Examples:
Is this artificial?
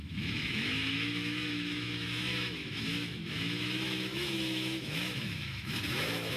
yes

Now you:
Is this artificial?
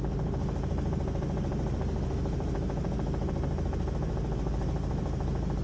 no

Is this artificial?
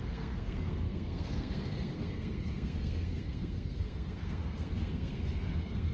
yes